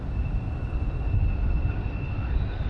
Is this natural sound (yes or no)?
yes